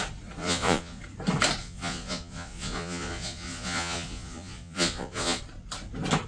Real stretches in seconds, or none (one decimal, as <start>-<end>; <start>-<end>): 0.0-0.4; 1.0-1.6; 5.4-6.3